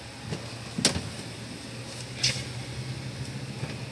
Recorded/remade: recorded